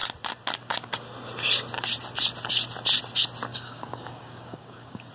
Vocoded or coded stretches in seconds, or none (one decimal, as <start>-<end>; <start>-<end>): 3.5-5.1